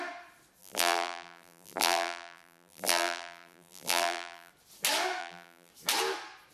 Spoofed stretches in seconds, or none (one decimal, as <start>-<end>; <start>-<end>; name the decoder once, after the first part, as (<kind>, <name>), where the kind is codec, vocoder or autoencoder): 0.6-4.5 (vocoder, BigVGAN v2); 5.2-5.7